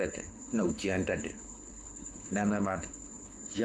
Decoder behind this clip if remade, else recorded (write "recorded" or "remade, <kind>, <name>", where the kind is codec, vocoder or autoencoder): remade, codec, HILCodec